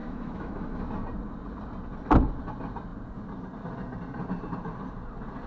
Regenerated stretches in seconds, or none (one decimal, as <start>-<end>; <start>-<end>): 0.0-0.8